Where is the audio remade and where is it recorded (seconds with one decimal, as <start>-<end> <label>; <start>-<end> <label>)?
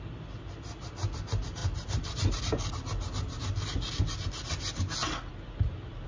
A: 0.0-6.1 recorded